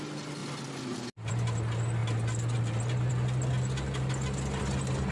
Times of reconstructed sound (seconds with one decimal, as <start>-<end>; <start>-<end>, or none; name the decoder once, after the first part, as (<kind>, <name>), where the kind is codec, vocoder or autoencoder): none